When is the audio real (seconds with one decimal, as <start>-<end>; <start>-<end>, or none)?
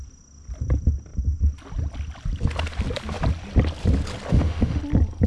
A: 0.0-4.3; 4.8-5.3